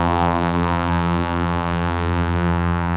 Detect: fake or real fake